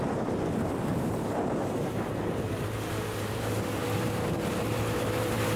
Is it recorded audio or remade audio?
remade